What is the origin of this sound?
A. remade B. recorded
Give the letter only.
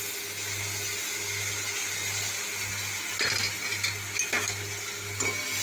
B